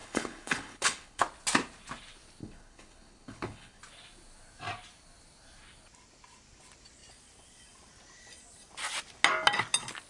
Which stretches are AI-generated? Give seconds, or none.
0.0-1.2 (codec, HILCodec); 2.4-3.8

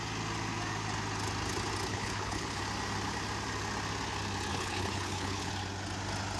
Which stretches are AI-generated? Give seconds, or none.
1.9-2.6 (codec, HILCodec); 4.5-5.5